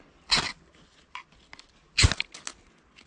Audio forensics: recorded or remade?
recorded